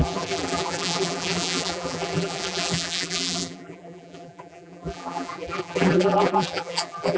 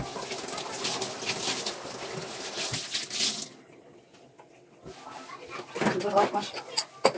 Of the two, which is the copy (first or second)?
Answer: first